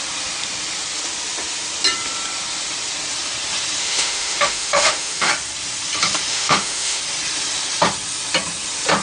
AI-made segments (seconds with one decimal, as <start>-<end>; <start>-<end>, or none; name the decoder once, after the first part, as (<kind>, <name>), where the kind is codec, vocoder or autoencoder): 3.8-5.3 (autoencoder, DAC-VAE); 6.3-7.0